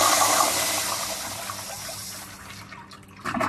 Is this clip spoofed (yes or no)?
yes